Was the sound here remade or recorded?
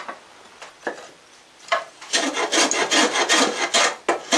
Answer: recorded